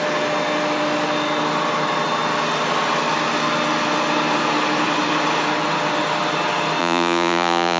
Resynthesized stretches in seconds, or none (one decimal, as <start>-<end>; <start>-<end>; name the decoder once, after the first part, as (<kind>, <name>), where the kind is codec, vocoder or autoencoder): 6.8-7.8 (vocoder, Vocos)